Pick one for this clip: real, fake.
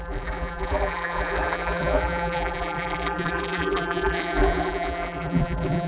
fake